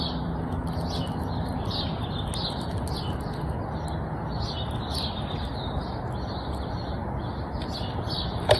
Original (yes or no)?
yes